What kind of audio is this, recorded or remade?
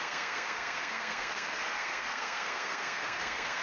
remade